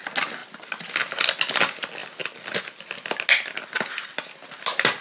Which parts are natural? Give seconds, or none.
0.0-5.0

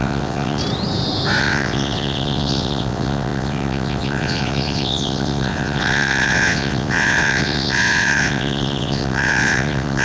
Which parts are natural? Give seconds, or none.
0.6-1.4

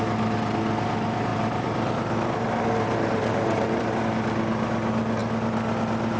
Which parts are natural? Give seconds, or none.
0.0-1.3; 4.0-6.2